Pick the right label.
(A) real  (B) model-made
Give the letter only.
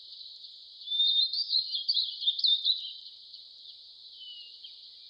B